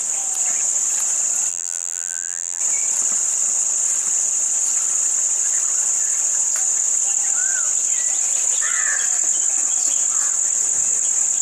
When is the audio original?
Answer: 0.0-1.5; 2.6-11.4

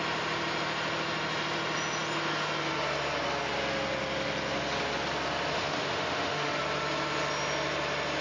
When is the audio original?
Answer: 0.0-5.5; 6.6-8.2

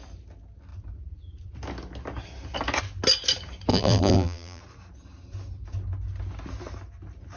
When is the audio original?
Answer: 0.0-3.7; 4.6-7.4

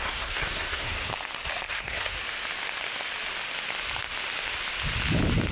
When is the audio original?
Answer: 1.1-1.7; 2.1-5.5

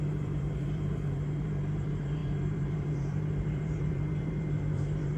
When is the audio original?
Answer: none

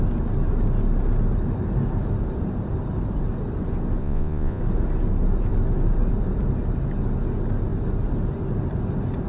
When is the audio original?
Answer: 0.0-4.0; 4.6-9.3